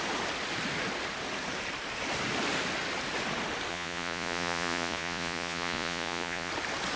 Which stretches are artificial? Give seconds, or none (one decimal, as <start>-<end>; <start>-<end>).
3.7-6.5